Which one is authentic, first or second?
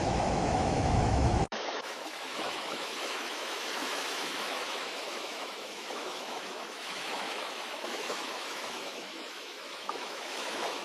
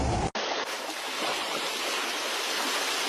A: second